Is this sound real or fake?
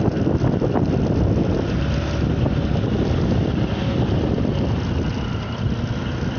real